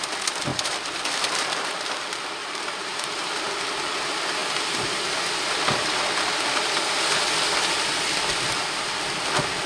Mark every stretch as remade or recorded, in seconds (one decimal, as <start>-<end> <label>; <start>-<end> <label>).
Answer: 0.0-0.5 recorded; 0.5-1.9 remade; 1.9-2.4 recorded; 2.4-3.4 remade; 3.4-9.7 recorded